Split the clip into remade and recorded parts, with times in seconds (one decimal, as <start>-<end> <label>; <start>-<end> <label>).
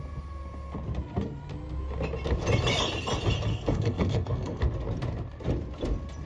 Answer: 0.0-3.5 recorded; 3.5-4.6 remade; 4.6-6.3 recorded